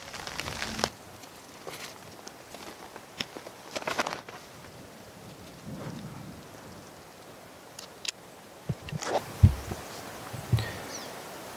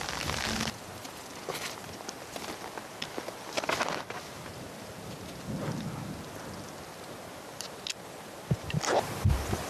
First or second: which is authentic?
second